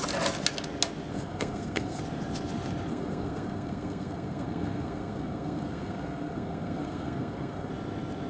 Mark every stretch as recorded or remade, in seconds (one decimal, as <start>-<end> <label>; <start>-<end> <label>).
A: 0.0-1.1 recorded; 1.1-2.0 remade; 2.0-2.9 recorded; 2.9-7.7 remade; 7.7-8.3 recorded